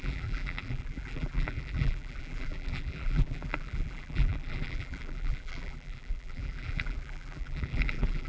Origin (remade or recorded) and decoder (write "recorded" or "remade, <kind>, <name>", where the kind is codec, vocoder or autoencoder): remade, vocoder, BigVGAN v2